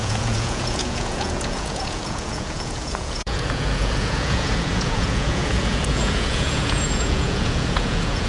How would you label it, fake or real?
fake